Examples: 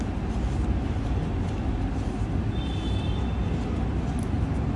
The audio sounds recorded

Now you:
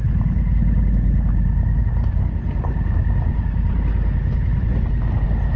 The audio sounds recorded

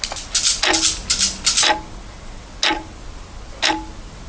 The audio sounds recorded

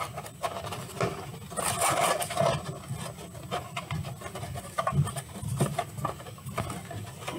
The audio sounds recorded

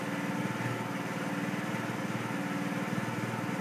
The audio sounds recorded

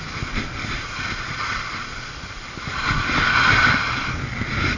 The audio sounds recorded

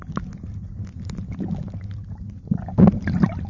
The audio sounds recorded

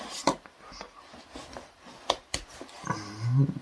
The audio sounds recorded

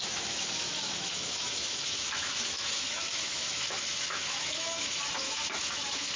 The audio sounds remade